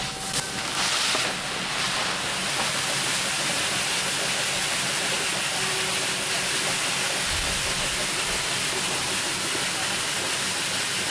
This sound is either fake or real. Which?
real